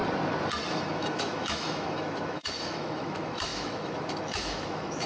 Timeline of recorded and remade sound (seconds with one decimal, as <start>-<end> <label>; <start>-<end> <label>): 0.0-0.7 recorded; 0.7-5.1 remade